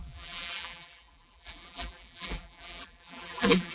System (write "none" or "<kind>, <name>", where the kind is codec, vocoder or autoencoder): vocoder, BigVGAN v2